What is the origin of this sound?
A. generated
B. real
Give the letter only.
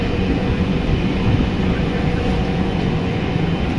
A